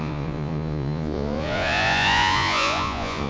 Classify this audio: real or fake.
fake